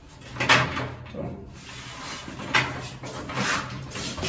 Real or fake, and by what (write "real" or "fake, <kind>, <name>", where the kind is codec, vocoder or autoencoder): real